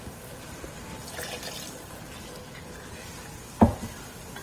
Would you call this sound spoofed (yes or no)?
no